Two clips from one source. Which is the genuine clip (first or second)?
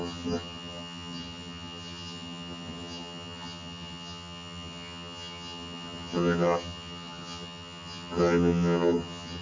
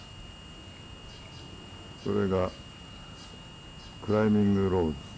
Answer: second